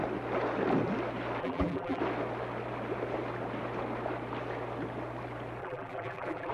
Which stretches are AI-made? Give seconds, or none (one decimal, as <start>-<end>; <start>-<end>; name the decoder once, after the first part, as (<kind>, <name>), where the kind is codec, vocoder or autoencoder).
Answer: 1.4-2.0 (vocoder, BigVGAN v2); 5.6-6.5